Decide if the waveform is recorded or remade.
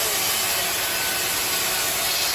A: recorded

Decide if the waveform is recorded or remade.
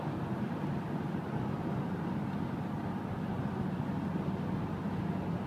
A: recorded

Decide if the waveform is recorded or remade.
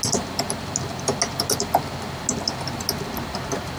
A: recorded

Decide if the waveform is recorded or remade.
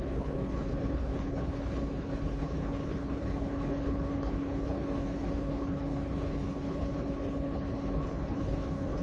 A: remade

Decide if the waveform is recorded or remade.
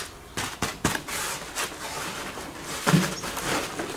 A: recorded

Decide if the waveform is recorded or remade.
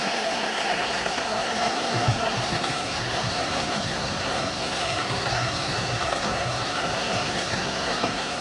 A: remade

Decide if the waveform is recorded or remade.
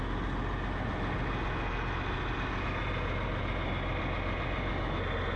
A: recorded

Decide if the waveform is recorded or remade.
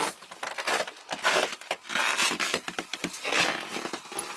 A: recorded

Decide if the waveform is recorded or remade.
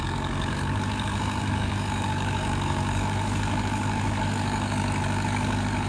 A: remade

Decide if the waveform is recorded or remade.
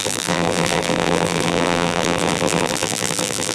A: remade